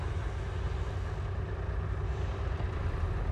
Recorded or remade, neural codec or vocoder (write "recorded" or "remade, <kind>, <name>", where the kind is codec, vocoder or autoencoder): recorded